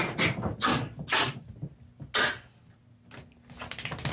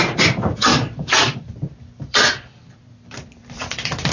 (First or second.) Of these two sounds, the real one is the first